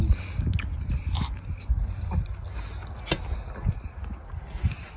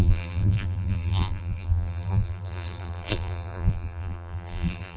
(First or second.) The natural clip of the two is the first